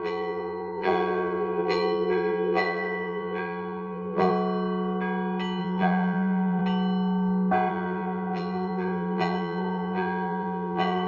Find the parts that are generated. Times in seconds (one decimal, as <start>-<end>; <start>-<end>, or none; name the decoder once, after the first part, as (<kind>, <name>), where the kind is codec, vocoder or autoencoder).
0.0-4.3 (vocoder, BigVGAN v2); 5.6-6.6; 7.7-11.1